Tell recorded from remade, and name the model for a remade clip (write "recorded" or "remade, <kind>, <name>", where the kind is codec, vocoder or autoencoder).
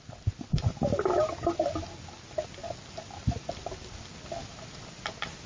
recorded